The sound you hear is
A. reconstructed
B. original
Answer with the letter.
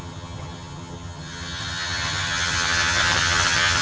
A